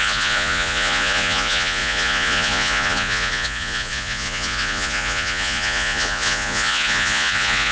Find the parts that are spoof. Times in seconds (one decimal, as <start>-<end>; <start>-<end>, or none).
0.0-7.7